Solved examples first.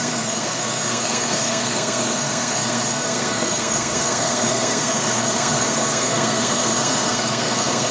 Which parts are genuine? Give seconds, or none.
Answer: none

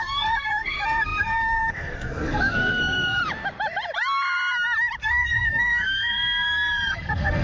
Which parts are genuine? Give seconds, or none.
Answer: 3.2-5.0

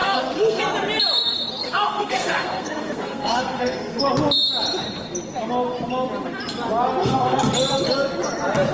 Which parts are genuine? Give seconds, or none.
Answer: 0.6-1.6; 4.0-7.0; 7.5-8.7

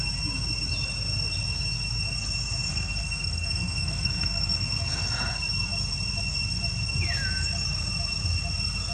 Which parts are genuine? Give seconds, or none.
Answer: 0.0-2.7; 5.0-8.9

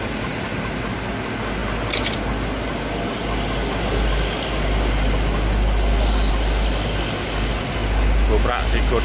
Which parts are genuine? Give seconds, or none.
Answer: 0.0-9.0

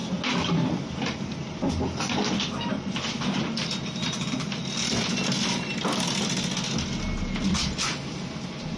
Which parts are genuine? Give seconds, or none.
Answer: 0.0-8.8